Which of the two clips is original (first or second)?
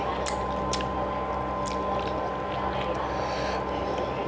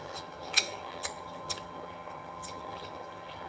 first